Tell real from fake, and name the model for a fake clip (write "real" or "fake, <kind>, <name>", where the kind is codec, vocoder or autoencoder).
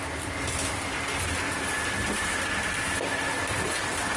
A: real